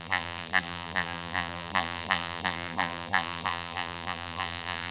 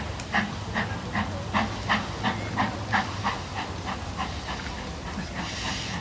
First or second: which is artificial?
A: first